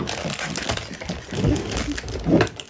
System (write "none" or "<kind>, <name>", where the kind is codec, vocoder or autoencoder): none